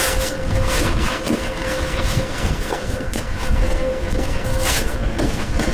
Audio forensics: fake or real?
fake